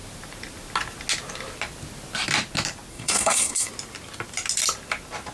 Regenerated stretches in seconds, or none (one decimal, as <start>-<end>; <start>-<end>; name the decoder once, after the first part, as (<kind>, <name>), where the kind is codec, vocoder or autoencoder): 2.9-3.7 (codec, SNAC)